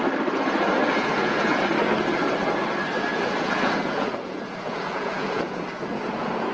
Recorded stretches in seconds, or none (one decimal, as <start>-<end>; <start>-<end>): 0.0-0.8; 1.6-3.1